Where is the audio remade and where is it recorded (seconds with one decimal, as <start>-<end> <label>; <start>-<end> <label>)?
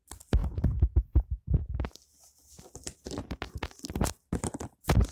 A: 0.0-5.1 recorded